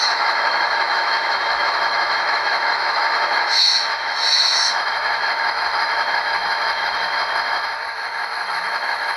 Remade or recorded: remade